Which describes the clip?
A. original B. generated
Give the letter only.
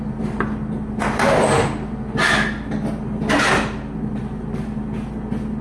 A